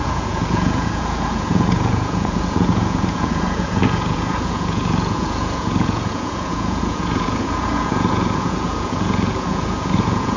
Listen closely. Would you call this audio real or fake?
fake